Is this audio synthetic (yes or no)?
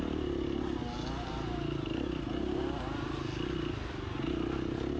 no